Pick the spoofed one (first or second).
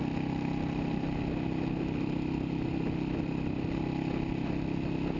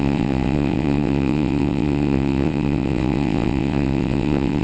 second